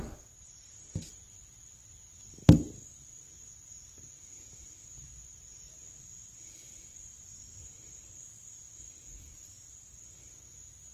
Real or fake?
real